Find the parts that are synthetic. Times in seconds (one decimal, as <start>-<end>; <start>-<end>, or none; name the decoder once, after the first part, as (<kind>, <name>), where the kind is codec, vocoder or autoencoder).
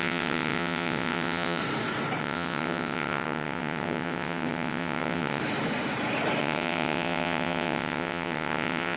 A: 0.0-1.6 (vocoder, WaveNeXt); 2.2-5.4; 6.4-9.0